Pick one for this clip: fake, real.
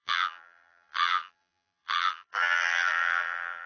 fake